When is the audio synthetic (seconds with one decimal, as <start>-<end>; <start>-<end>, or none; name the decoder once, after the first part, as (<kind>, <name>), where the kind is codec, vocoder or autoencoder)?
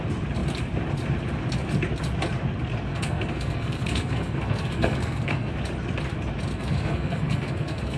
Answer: 2.9-5.5 (codec, SNAC); 6.5-8.0